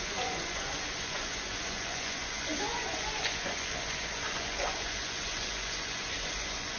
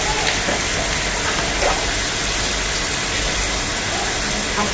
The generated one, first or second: first